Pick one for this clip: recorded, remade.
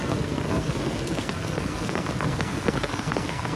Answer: remade